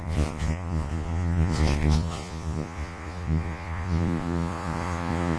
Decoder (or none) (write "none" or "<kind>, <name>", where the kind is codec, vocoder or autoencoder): vocoder, Vocos